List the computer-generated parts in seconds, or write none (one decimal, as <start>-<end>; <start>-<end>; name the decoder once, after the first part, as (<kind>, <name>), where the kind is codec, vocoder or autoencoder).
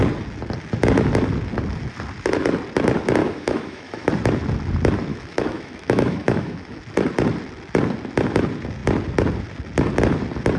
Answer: 3.2-4.1 (autoencoder, DAC-VAE); 5.1-6.8